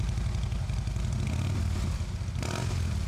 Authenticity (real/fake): real